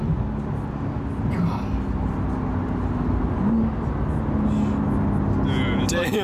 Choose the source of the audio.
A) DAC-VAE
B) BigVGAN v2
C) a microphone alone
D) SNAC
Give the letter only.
C